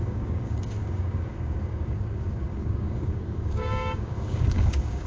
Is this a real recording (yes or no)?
no